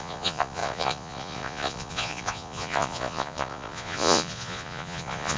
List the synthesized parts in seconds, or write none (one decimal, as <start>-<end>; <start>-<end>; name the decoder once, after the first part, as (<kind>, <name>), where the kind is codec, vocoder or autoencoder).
0.0-5.4 (vocoder, Vocos)

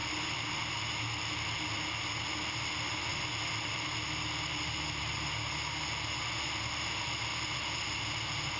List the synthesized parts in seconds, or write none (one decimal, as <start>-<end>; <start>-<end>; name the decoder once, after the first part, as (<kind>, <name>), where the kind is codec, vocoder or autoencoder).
none

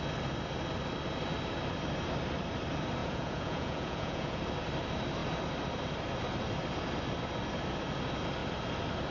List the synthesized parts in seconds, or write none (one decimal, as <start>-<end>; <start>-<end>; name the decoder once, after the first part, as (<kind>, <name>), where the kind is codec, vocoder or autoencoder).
3.0-4.4 (vocoder, Vocos)